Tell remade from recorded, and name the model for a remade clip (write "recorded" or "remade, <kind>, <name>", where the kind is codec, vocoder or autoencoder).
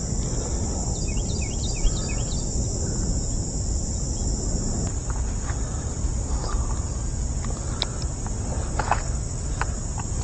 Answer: recorded